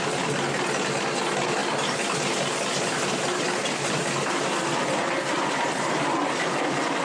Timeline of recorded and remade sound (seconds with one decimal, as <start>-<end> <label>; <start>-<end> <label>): 0.0-7.0 recorded